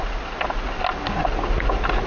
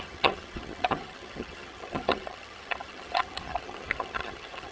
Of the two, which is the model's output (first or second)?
second